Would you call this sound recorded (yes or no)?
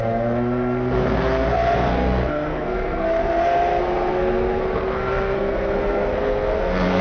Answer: no